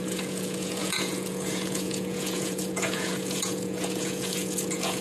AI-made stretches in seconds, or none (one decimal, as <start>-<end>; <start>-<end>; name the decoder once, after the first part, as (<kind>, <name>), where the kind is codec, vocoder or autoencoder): 0.0-5.0 (vocoder, Vocos)